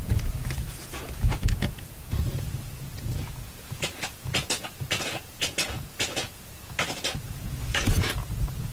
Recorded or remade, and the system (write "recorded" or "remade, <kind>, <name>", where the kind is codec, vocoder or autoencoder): remade, vocoder, Vocos